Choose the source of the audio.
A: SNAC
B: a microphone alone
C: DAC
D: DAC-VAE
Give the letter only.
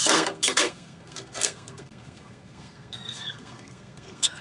A